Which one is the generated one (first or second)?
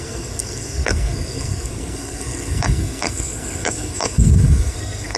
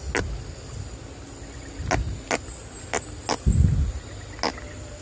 first